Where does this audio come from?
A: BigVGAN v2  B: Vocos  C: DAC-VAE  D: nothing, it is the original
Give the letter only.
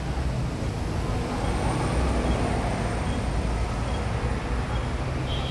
D